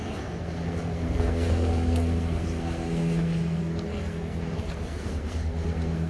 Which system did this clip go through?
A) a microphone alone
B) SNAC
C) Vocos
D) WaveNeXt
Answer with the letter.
B